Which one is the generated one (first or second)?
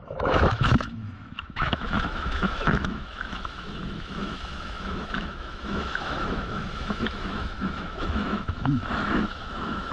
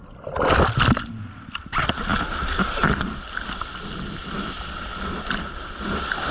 first